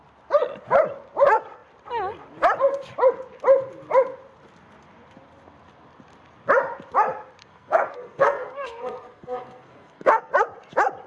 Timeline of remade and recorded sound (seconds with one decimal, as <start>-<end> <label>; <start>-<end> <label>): 0.0-7.4 recorded; 7.4-10.3 remade; 10.3-11.1 recorded